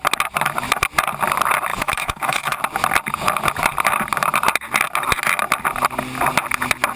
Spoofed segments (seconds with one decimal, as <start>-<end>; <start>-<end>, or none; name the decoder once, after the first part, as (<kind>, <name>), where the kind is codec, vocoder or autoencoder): 1.7-2.6 (autoencoder, DAC-VAE)

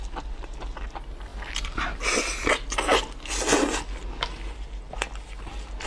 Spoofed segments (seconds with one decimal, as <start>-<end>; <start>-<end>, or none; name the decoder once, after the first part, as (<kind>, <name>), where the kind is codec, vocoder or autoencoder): none

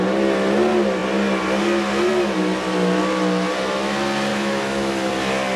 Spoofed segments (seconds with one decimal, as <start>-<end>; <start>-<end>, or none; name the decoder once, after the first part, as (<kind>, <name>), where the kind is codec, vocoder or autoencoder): 4.3-5.1 (autoencoder, DAC-VAE)

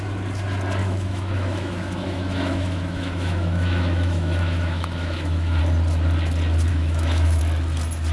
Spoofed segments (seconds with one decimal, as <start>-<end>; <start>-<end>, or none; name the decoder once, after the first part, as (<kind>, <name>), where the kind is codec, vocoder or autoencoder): 0.8-5.6 (autoencoder, DAC-VAE); 6.7-7.4

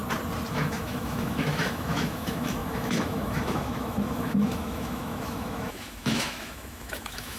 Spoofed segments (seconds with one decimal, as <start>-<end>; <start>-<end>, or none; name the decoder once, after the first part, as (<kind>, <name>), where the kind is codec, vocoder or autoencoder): 0.5-7.4 (autoencoder, DAC-VAE)

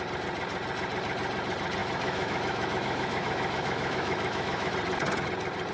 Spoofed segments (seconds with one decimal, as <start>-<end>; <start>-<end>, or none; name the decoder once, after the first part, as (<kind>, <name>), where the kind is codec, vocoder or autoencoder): 1.8-4.7 (autoencoder, DAC-VAE)

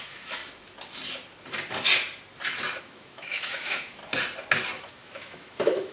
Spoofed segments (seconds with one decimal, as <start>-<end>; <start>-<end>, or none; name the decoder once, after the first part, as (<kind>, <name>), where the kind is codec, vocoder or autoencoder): 0.0-0.4 (autoencoder, DAC-VAE); 2.8-4.0; 4.9-5.9